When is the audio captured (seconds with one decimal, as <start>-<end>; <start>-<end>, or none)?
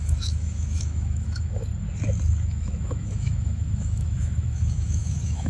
1.7-2.5